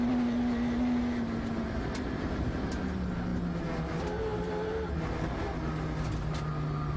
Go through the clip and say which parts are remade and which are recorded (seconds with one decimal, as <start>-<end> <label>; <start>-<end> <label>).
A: 0.0-7.0 recorded